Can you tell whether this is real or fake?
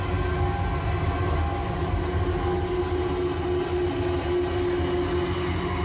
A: real